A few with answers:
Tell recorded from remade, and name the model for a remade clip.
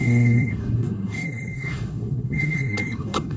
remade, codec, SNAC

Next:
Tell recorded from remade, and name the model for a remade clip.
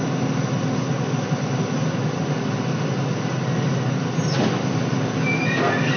recorded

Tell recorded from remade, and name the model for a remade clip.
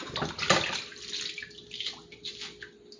recorded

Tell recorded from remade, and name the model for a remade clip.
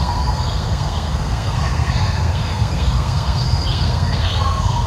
remade, codec, SNAC